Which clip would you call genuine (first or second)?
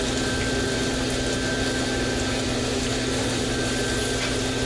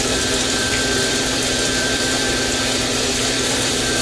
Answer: first